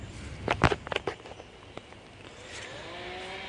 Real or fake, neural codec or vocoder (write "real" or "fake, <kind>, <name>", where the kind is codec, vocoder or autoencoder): fake, vocoder, BigVGAN v2